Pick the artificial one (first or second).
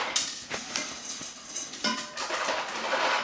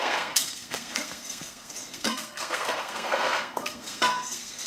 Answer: second